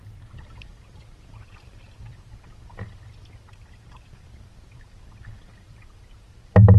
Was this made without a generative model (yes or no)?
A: no